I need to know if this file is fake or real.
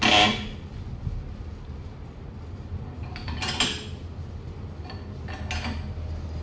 real